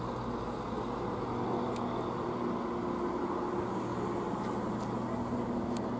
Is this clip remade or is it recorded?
recorded